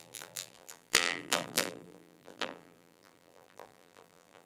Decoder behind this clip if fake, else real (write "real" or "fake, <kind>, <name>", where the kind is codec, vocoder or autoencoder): fake, vocoder, BigVGAN v2